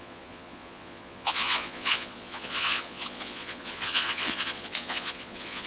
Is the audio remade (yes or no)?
yes